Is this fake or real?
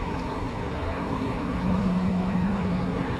fake